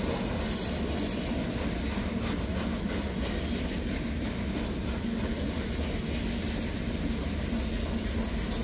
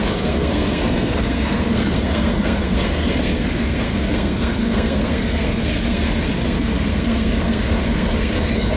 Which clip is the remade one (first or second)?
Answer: second